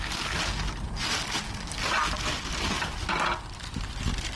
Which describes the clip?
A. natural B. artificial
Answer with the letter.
A